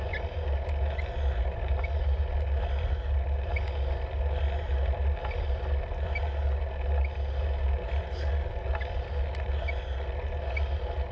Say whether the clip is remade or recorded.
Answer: recorded